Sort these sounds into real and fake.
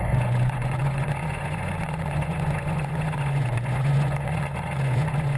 fake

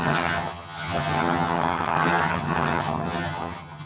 fake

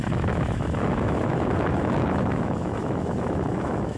fake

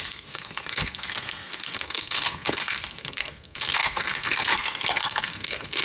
fake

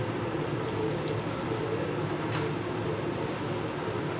real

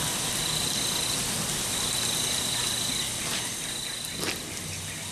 real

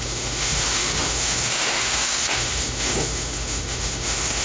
fake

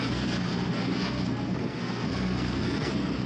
fake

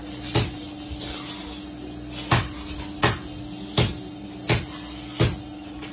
real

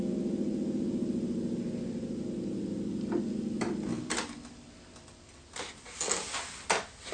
real